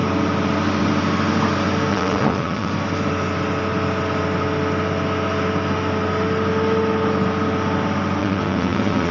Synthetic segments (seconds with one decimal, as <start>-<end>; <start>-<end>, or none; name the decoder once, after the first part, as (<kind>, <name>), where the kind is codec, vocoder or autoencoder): 1.9-2.7 (vocoder, WaveNeXt); 8.2-9.1